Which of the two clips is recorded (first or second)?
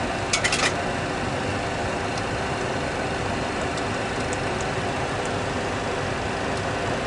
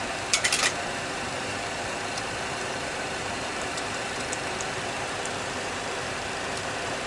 first